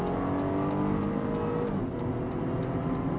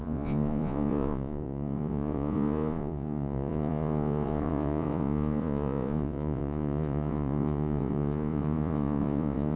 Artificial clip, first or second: second